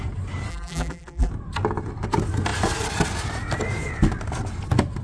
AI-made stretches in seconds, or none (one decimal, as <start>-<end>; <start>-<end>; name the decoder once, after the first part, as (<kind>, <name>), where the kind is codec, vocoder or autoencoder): 0.5-1.3 (vocoder, BigVGAN v2)